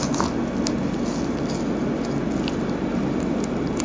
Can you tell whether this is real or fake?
real